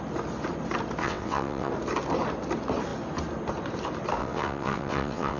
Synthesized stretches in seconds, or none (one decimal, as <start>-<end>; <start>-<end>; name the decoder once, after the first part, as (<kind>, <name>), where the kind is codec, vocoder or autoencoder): 1.0-1.7 (vocoder, WaveNeXt); 4.2-5.4